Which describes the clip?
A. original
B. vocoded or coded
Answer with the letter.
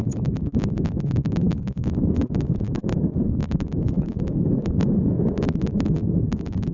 B